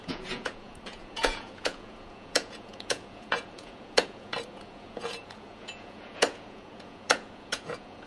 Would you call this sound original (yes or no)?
no